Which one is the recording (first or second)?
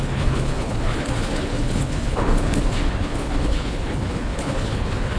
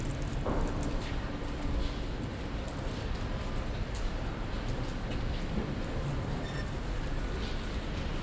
second